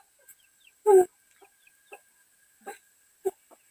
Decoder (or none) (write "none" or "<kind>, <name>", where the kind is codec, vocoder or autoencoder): none